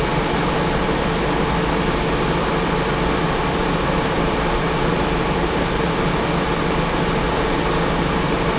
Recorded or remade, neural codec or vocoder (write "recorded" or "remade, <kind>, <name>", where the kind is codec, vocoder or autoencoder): recorded